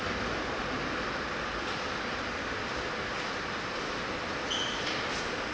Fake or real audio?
real